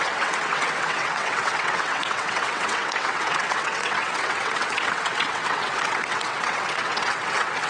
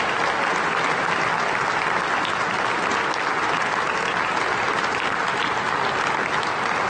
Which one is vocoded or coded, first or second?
first